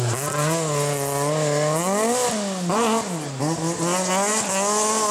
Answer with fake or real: real